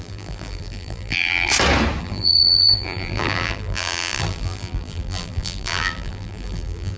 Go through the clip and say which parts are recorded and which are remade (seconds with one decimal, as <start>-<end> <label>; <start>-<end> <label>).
0.0-1.5 remade; 1.5-2.0 recorded; 2.0-7.0 remade